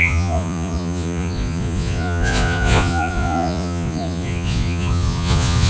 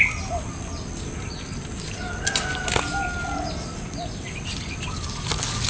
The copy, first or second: first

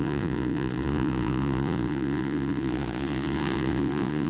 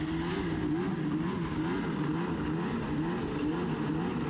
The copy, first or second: first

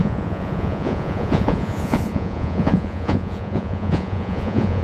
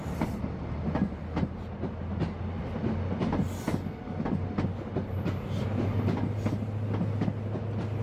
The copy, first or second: first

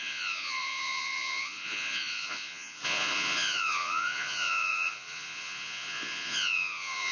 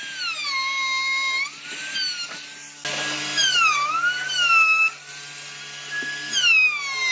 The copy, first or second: first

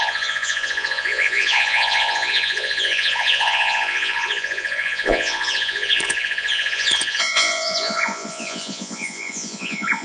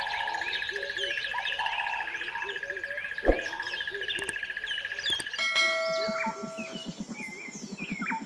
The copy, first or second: first